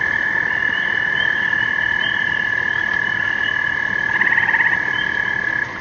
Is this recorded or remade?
recorded